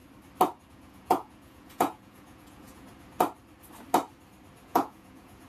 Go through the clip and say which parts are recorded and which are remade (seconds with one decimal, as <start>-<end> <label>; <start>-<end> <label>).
0.0-0.7 recorded; 0.7-2.9 remade; 2.9-4.6 recorded; 4.6-5.5 remade